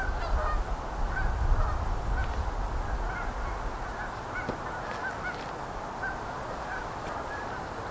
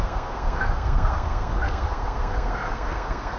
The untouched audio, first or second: first